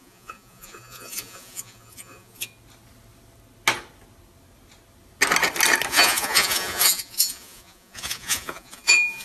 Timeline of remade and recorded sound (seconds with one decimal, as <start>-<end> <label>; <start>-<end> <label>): 0.0-2.5 remade; 2.5-5.9 recorded; 5.9-9.2 remade